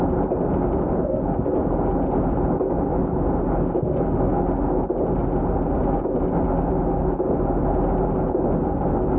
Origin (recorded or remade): recorded